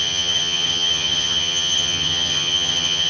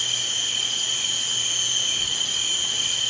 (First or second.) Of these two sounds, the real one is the second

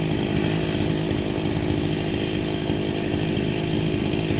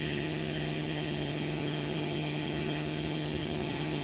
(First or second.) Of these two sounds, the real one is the first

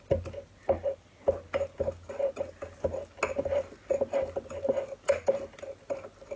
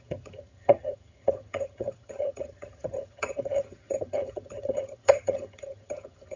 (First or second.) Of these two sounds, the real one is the first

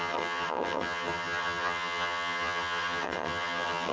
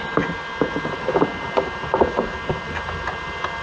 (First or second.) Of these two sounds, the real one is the second